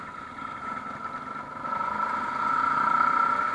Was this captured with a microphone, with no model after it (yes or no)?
yes